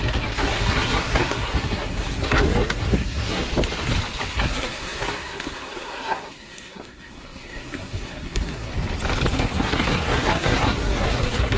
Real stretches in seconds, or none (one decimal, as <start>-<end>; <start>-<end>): 3.5-4.3; 8.7-9.3